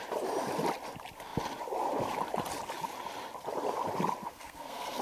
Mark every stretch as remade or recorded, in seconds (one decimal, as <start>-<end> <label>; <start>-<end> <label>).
0.0-4.2 recorded; 4.2-5.0 remade

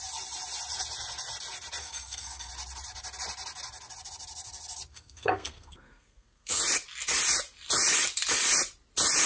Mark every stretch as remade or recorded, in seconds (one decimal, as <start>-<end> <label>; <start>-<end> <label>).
0.0-1.8 recorded; 1.8-2.5 remade; 2.5-4.9 recorded; 4.9-6.6 remade; 6.6-9.3 recorded

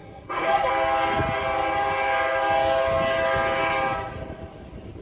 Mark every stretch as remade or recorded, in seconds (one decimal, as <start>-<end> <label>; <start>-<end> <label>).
0.0-0.7 remade; 0.7-5.0 recorded

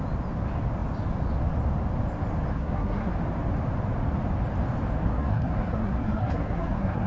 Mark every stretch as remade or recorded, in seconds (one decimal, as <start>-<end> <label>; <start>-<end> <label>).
0.0-2.5 recorded; 2.5-3.1 remade; 3.1-5.1 recorded; 5.1-7.1 remade

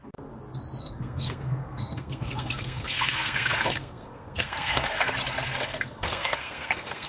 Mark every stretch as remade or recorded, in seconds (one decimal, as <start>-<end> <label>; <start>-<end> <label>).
0.0-0.8 recorded; 0.8-5.1 remade; 5.1-5.5 recorded; 5.5-7.1 remade

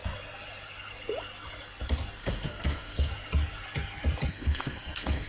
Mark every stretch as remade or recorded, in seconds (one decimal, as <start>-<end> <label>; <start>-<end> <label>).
0.0-2.2 recorded; 2.2-3.1 remade; 3.1-4.3 recorded; 4.3-5.3 remade